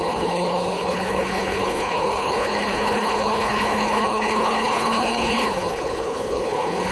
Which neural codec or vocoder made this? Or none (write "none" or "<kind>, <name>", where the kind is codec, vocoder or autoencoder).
codec, HILCodec